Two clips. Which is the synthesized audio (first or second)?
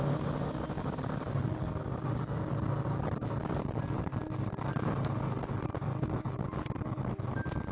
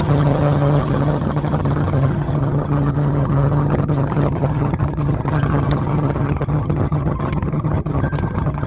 second